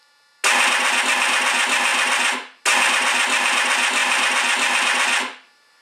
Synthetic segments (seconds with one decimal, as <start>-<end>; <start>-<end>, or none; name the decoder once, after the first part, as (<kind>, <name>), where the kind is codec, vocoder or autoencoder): none